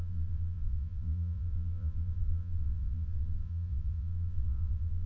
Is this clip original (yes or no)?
no